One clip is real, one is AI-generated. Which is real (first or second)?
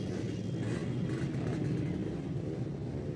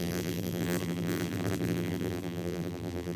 first